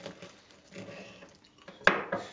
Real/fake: real